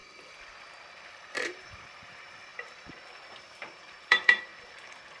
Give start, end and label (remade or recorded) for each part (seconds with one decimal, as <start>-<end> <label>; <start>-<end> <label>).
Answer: 0.0-1.1 recorded; 1.1-2.5 remade; 2.5-3.3 recorded; 3.3-4.5 remade; 4.5-5.2 recorded